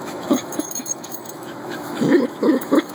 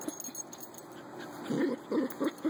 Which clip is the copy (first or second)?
first